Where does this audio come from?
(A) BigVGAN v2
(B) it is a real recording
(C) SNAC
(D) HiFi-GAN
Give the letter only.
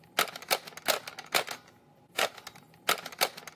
B